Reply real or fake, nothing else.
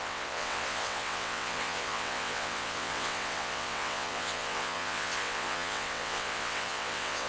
fake